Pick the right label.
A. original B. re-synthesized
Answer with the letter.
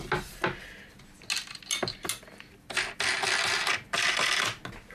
A